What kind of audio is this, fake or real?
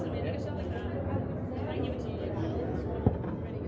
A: real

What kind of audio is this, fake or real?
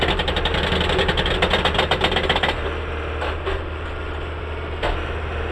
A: real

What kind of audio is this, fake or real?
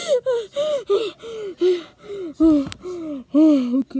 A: real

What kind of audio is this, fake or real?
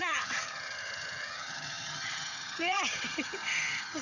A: fake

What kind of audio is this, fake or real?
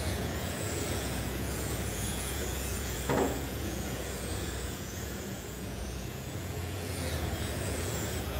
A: fake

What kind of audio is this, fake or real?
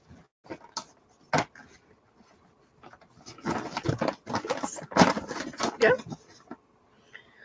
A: real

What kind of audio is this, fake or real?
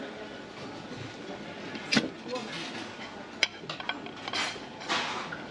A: real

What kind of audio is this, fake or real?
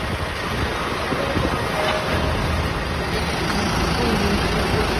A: real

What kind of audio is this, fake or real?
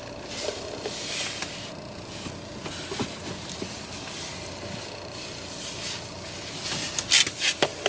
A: real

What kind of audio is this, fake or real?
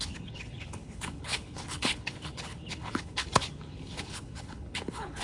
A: fake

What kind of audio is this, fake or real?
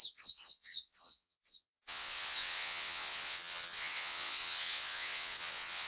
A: fake